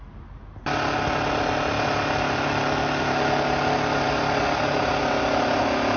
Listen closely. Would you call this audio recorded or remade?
recorded